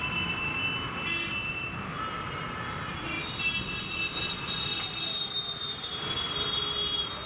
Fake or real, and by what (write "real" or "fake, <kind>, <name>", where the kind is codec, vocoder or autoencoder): real